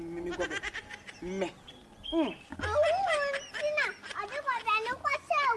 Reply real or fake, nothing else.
real